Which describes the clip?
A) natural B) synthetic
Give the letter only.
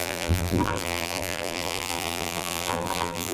B